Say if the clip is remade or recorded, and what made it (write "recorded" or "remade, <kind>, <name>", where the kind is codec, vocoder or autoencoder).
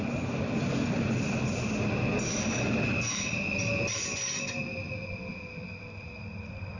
recorded